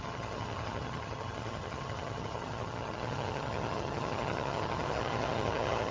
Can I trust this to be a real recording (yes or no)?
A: no